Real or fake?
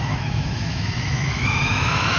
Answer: fake